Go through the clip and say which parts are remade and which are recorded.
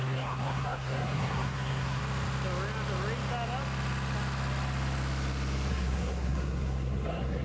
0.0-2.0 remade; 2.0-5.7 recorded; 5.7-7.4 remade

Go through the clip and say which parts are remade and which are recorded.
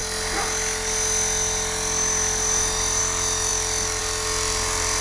0.0-5.0 recorded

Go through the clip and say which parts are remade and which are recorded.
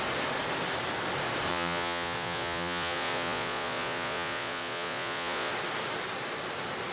0.0-1.5 recorded; 1.5-5.5 remade; 5.5-6.9 recorded